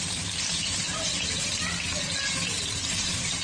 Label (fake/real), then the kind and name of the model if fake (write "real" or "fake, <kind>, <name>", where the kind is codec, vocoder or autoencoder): real